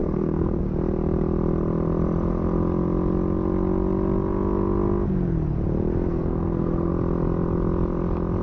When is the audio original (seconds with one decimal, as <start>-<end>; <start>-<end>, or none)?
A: 0.6-6.1; 6.9-8.4